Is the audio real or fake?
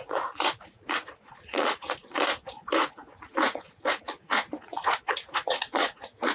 fake